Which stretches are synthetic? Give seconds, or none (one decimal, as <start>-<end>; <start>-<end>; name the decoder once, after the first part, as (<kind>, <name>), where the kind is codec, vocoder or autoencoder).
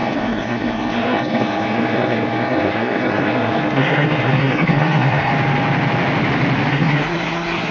0.0-5.3 (codec, SNAC); 6.7-7.7